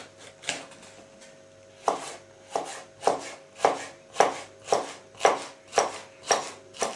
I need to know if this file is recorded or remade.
recorded